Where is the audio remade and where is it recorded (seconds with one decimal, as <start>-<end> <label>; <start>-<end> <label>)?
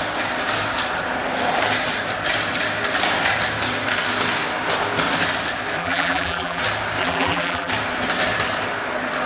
0.0-5.8 recorded; 5.8-6.6 remade; 6.6-7.0 recorded; 7.0-7.7 remade; 7.7-9.3 recorded